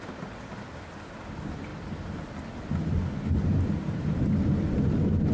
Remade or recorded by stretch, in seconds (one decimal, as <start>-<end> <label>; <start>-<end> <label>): 0.0-5.3 recorded